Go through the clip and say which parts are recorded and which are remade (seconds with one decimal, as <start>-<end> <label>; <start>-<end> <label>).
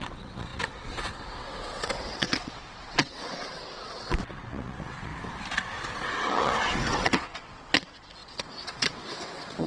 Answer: 0.0-5.1 remade; 5.1-5.9 recorded; 5.9-9.7 remade